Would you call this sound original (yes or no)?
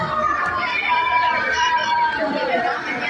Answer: no